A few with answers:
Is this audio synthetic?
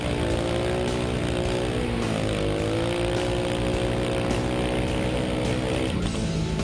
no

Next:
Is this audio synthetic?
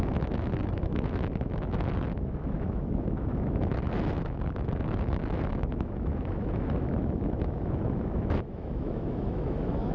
yes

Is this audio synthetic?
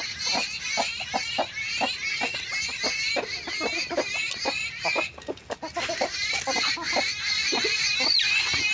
no